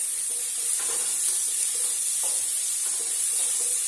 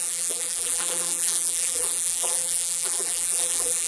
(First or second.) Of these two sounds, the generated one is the second